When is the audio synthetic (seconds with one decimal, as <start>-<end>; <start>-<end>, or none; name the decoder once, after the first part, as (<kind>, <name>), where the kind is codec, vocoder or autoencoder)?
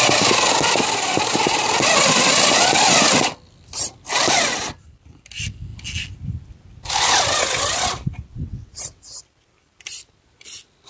8.3-9.2 (vocoder, WaveNeXt)